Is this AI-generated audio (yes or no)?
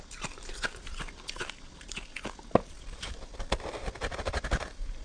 no